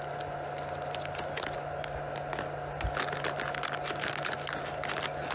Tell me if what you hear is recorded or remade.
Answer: recorded